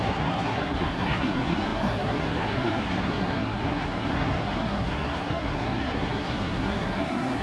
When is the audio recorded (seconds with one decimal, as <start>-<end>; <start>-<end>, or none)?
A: none